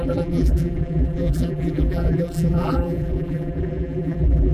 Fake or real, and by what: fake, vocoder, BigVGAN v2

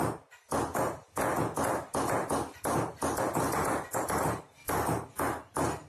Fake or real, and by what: real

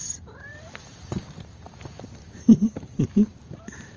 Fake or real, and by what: fake, vocoder, BigVGAN v2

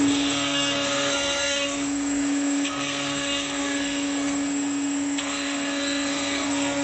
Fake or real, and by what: fake, codec, SNAC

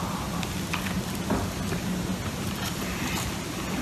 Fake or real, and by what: real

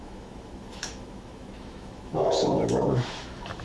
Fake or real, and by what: fake, autoencoder, DAC-VAE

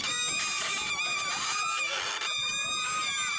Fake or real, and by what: real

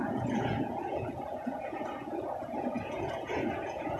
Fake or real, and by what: fake, vocoder, Vocos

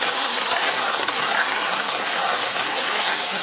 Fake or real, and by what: fake, codec, SNAC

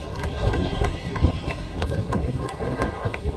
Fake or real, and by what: fake, codec, SNAC